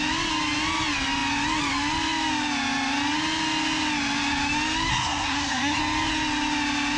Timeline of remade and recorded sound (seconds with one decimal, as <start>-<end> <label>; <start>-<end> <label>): 0.0-4.9 recorded; 4.9-5.8 remade; 5.8-7.0 recorded